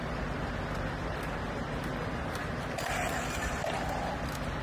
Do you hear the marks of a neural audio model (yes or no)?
no